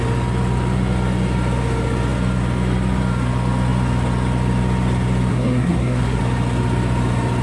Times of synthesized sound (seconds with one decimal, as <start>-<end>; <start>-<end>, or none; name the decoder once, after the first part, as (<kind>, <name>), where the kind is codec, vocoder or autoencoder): 5.3-6.2 (codec, SNAC)